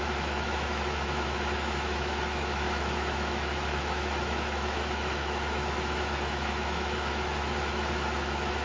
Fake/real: fake